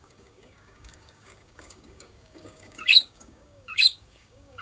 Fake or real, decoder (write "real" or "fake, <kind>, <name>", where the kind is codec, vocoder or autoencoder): fake, codec, DAC